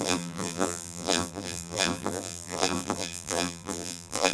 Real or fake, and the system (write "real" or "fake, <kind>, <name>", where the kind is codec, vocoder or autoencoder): fake, vocoder, BigVGAN v2